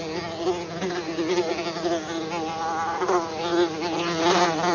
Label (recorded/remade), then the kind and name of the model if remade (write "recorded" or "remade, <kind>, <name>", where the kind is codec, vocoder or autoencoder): recorded